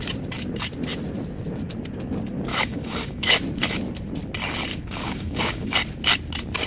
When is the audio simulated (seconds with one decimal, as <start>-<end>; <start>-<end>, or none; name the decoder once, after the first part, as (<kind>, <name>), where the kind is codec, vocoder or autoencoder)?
2.5-3.4 (codec, DAC); 4.7-5.8